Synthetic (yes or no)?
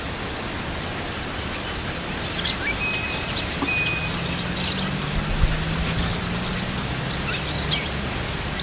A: no